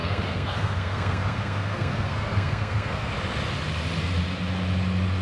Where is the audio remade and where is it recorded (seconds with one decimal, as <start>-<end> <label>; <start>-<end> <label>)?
0.0-3.1 remade; 3.1-5.2 recorded